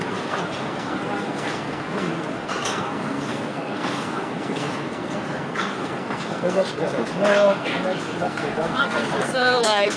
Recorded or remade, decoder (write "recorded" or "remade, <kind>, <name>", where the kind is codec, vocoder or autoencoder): remade, codec, SNAC